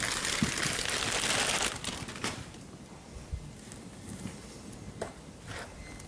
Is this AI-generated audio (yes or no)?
no